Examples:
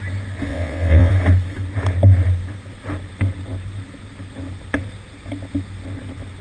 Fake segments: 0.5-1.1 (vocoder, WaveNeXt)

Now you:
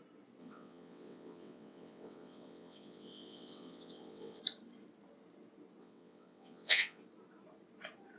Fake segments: 0.4-4.4 (vocoder, WaveNeXt); 5.8-7.0